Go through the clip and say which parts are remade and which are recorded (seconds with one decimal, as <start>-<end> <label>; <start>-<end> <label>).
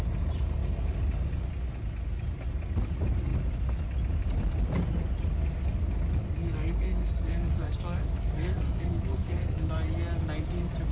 0.0-6.4 recorded; 6.4-9.7 remade; 9.7-10.9 recorded